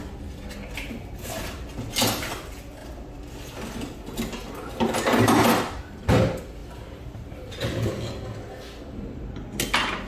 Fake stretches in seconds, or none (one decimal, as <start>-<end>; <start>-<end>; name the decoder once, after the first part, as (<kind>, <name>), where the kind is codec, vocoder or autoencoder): 6.6-7.9 (vocoder, BigVGAN v2)